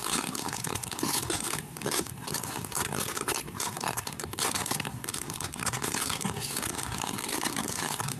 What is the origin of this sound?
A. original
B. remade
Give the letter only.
B